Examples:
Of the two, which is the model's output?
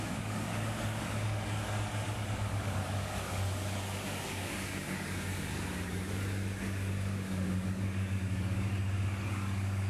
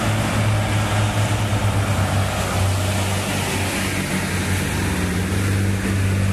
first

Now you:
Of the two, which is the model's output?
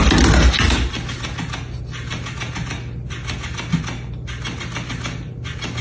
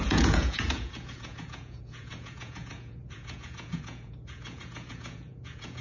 second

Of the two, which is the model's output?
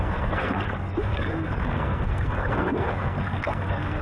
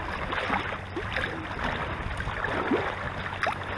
first